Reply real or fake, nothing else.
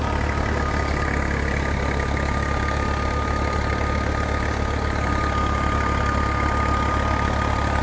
real